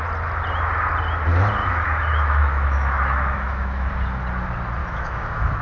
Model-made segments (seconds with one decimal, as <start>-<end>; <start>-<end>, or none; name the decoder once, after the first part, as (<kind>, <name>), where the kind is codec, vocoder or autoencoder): 1.6-3.9 (autoencoder, DAC-VAE); 4.8-5.6